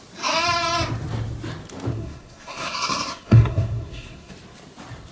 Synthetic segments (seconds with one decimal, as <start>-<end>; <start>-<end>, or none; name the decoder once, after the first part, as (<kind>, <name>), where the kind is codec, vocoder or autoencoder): 1.9-4.3 (codec, SNAC)